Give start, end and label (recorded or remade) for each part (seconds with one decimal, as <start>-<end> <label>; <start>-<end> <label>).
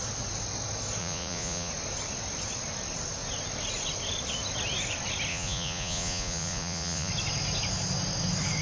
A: 0.0-1.0 recorded; 1.0-1.7 remade; 1.7-5.3 recorded; 5.3-7.1 remade; 7.1-8.6 recorded